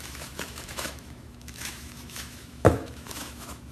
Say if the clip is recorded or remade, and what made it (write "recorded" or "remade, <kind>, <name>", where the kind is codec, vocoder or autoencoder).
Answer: remade, autoencoder, DAC-VAE